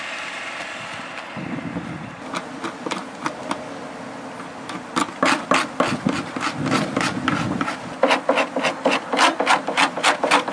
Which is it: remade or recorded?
recorded